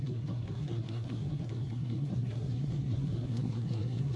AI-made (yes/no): yes